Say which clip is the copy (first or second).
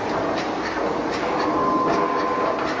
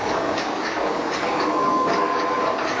second